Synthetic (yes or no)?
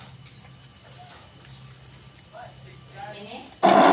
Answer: no